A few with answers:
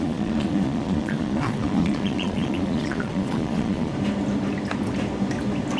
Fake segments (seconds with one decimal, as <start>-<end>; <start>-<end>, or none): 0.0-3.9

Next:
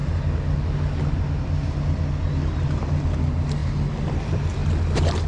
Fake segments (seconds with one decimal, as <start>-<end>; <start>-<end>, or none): 3.2-3.6; 4.1-4.6

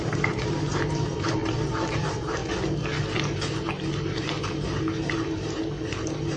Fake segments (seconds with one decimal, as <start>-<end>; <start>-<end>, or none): 0.0-1.4; 1.9-2.4